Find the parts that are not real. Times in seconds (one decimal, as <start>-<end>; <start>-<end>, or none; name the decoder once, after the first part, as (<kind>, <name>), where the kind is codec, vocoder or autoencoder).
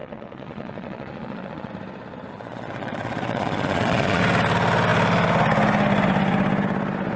0.0-1.7 (vocoder, Vocos); 2.3-4.2